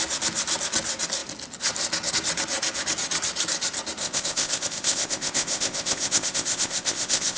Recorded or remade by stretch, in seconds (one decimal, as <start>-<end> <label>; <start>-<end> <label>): 0.0-4.0 recorded; 4.0-7.4 remade